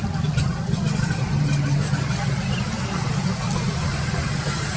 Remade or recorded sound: remade